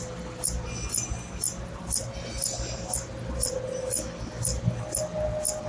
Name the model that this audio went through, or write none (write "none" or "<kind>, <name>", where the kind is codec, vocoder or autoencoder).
none